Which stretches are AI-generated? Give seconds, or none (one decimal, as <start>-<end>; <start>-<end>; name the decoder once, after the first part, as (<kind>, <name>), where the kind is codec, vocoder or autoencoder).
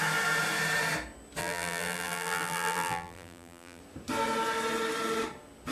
1.4-3.8 (vocoder, BigVGAN v2)